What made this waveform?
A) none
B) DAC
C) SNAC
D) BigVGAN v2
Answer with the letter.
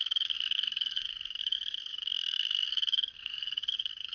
C